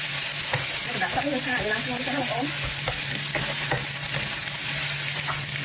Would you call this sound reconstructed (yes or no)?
no